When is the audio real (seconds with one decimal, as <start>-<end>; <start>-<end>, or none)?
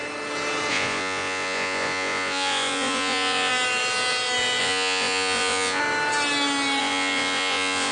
0.0-0.7; 3.5-4.6; 5.8-6.8